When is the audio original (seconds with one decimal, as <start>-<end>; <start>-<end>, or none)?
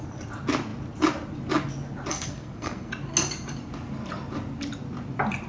0.0-2.1; 2.9-5.5